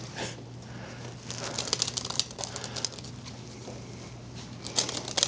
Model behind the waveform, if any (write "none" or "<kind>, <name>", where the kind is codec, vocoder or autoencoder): none